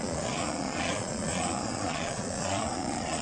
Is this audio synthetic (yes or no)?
yes